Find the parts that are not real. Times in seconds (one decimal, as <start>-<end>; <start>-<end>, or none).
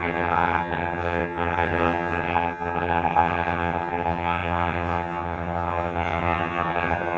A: 0.0-7.2